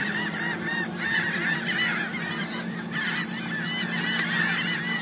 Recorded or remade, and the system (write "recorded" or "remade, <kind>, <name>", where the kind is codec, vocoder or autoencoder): recorded